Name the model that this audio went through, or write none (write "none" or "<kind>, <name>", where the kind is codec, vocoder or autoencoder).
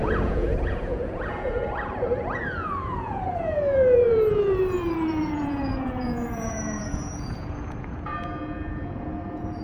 vocoder, Vocos